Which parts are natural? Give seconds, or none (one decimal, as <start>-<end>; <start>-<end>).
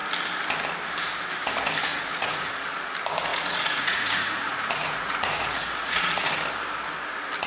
0.0-1.9; 2.5-3.3; 6.3-7.5